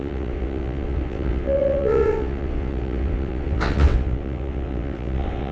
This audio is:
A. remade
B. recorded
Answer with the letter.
A